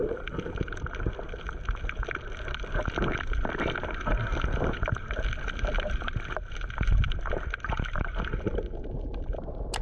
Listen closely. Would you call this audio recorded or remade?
recorded